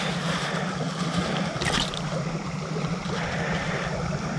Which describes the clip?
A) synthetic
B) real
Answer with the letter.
B